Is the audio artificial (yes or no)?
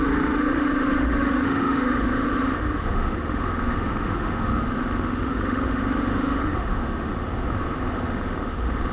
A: yes